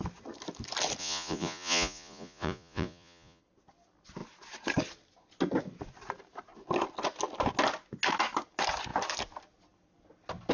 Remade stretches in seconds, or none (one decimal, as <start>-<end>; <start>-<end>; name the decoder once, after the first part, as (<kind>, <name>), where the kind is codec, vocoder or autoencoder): 1.0-3.4 (vocoder, Vocos)